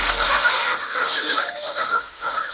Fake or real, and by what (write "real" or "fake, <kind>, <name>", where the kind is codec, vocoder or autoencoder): fake, autoencoder, DAC-VAE